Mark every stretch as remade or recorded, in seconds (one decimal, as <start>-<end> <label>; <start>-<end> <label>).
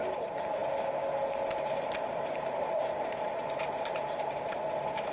0.0-5.1 recorded